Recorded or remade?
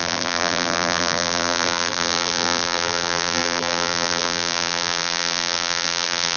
remade